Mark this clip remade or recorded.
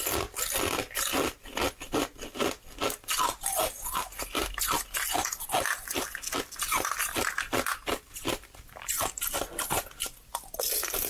recorded